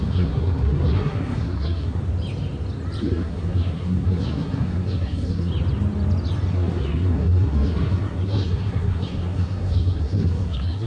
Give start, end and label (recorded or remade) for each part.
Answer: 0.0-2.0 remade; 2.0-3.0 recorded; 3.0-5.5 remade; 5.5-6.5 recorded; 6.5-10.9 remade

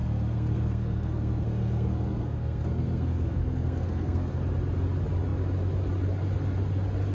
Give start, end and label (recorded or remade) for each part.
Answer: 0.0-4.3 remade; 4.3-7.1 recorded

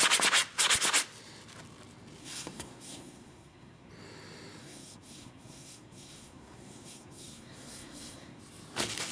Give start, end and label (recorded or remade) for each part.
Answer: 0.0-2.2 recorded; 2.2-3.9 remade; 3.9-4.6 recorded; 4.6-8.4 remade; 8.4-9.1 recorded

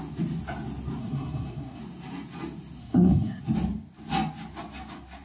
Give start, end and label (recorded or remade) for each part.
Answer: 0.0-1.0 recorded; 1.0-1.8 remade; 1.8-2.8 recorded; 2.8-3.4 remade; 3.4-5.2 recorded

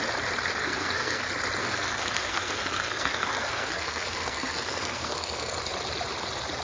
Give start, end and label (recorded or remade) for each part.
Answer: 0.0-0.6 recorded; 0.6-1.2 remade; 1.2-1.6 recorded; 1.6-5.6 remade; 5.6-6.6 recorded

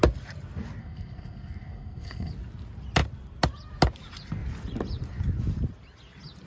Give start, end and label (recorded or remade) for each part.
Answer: 0.0-0.8 recorded; 0.8-2.3 remade; 2.3-6.5 recorded